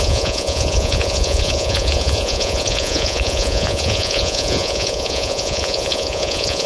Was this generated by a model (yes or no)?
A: yes